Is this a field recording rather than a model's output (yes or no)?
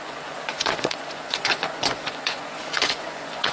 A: no